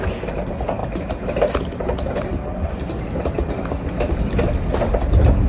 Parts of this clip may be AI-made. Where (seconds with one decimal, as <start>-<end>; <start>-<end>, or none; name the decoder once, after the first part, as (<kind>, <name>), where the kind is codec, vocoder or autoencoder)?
none